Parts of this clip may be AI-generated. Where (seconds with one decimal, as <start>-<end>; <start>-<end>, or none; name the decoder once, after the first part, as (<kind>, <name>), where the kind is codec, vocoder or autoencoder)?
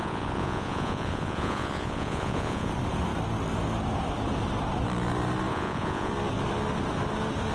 0.0-2.7 (vocoder, Vocos); 5.5-6.1